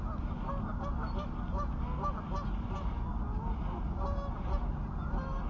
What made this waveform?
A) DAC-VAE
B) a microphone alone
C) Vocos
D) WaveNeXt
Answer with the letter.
B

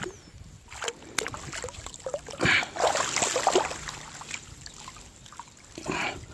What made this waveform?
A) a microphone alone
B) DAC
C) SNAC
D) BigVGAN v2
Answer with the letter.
A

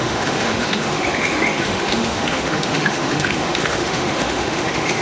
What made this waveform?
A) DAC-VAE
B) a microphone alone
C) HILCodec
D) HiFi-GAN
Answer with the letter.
A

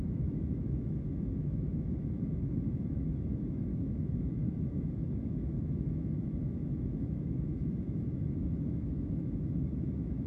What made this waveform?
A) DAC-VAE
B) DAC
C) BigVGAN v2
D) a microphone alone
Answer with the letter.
A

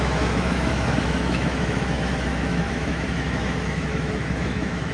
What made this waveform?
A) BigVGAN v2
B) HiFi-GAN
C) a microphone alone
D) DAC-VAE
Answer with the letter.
D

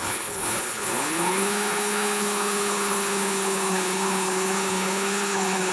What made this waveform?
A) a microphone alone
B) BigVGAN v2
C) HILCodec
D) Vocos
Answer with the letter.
C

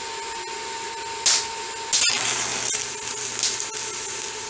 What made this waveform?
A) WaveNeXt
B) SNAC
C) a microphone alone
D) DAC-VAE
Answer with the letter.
C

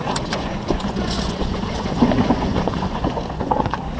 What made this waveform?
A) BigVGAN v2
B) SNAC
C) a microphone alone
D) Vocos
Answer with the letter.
D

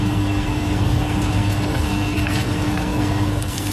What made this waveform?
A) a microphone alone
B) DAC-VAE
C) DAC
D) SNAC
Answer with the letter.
D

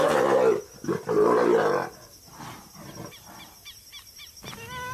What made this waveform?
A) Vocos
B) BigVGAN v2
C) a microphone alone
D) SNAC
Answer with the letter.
C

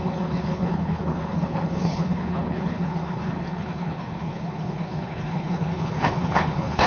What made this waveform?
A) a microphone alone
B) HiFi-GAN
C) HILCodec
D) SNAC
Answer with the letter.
C